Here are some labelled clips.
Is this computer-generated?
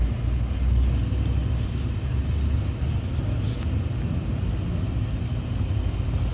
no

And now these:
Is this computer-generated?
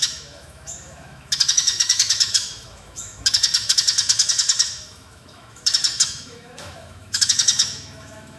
yes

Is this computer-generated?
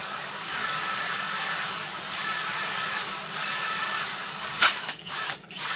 yes